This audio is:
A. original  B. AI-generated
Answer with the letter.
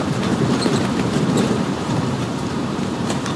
B